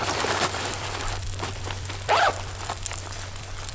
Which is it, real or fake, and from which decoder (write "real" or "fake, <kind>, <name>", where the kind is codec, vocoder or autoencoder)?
fake, vocoder, BigVGAN v2